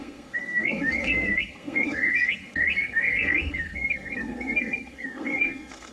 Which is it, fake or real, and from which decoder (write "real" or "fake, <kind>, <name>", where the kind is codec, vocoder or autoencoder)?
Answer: fake, codec, SNAC